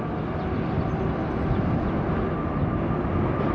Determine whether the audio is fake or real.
real